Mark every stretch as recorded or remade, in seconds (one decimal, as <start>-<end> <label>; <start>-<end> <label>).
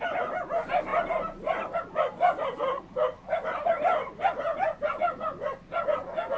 0.0-6.4 recorded